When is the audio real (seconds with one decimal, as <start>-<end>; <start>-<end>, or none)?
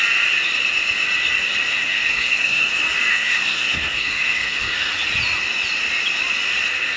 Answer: 0.0-1.7; 2.7-3.1; 4.9-7.0